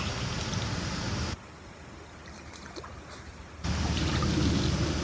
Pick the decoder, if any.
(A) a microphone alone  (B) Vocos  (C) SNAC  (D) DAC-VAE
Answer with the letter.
A